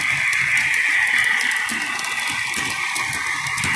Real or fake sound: real